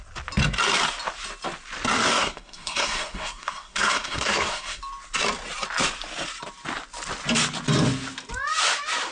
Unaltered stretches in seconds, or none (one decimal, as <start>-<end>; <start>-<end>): 0.0-2.1; 4.8-9.1